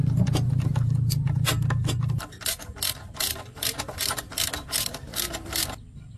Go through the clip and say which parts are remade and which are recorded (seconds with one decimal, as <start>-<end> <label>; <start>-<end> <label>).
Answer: 0.0-6.2 recorded